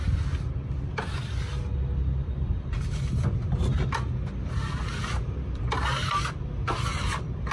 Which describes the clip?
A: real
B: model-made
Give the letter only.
A